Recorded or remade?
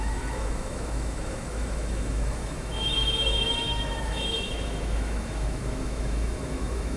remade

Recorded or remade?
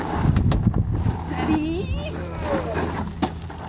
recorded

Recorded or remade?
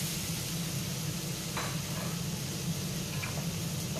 recorded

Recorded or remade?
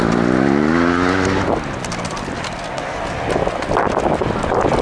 recorded